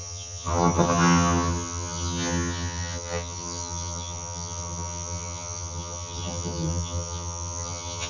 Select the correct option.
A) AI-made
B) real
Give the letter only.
A